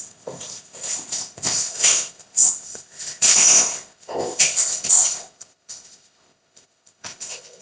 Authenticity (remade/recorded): remade